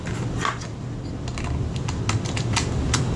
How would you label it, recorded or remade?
recorded